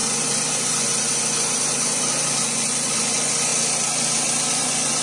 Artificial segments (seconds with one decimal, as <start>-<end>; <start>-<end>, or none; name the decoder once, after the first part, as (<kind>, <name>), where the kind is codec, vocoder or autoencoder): 0.0-3.5 (vocoder, Vocos); 4.5-5.0